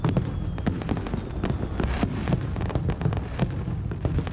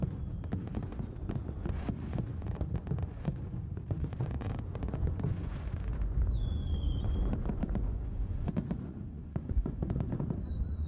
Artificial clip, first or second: second